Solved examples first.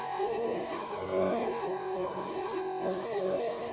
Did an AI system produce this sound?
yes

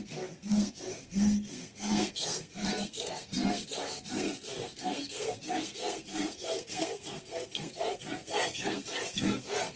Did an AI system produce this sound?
yes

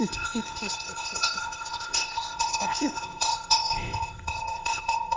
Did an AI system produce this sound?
yes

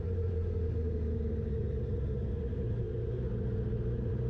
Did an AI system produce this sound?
no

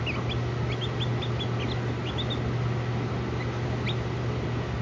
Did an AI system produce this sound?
no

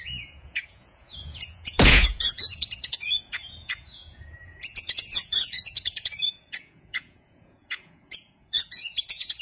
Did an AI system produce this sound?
yes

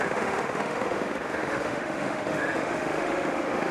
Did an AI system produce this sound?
yes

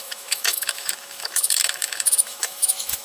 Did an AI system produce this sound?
yes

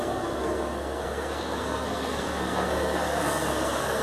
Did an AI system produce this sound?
yes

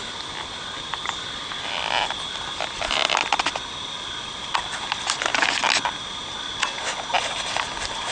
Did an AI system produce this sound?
no